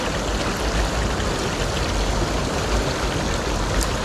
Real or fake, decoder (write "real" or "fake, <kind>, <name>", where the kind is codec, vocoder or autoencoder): real